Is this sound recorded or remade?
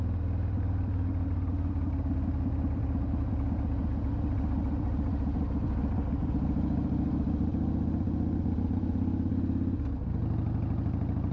recorded